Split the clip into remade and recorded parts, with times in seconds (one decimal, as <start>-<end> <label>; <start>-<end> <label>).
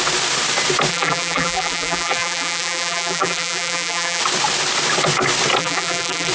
0.0-0.9 recorded; 0.9-4.2 remade; 4.2-5.6 recorded; 5.6-6.3 remade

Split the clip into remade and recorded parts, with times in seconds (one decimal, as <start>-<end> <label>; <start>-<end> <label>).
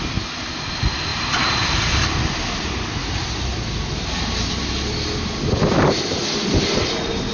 0.0-1.1 recorded; 1.1-2.2 remade; 2.2-3.5 recorded; 3.5-4.7 remade; 4.7-7.3 recorded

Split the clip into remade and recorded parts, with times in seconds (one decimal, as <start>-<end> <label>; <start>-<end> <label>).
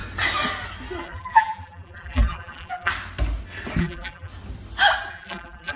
0.0-1.0 recorded; 1.0-2.9 remade; 2.9-3.8 recorded; 3.8-4.3 remade; 4.3-5.1 recorded; 5.1-5.8 remade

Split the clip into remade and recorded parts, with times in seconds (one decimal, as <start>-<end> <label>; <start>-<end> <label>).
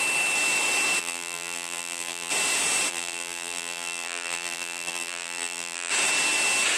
0.0-1.0 recorded; 1.0-2.3 remade; 2.3-2.9 recorded; 2.9-5.9 remade; 5.9-6.8 recorded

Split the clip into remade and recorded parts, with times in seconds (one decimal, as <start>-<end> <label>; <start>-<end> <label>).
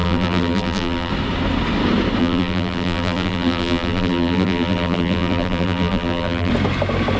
0.0-1.1 remade; 1.1-2.2 recorded; 2.2-6.5 remade; 6.5-7.2 recorded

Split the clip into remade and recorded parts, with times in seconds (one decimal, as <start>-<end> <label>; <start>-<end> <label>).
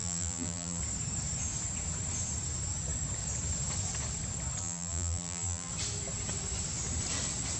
0.0-0.8 remade; 0.8-4.6 recorded; 4.6-5.7 remade; 5.7-7.6 recorded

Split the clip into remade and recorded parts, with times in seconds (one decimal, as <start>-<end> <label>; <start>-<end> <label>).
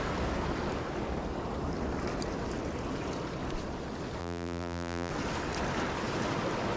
0.0-4.2 recorded; 4.2-5.1 remade; 5.1-6.8 recorded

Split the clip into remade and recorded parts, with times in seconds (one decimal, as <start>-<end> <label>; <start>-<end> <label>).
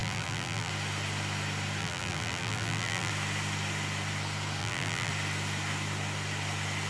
0.0-0.7 remade; 0.7-1.8 recorded; 1.8-3.1 remade; 3.1-4.6 recorded; 4.6-5.1 remade; 5.1-6.9 recorded